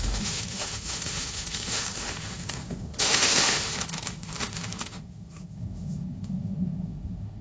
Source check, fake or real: fake